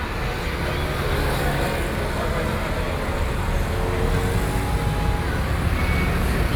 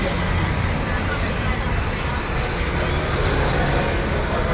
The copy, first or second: second